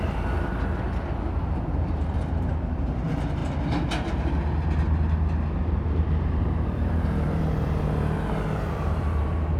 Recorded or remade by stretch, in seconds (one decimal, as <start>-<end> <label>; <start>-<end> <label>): 0.0-0.5 remade; 0.5-1.4 recorded; 1.4-3.4 remade; 3.4-5.8 recorded; 5.8-9.6 remade